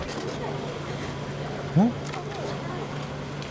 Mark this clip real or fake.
real